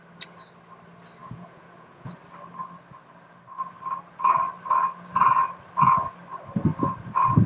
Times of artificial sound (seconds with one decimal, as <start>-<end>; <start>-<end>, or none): 1.2-2.1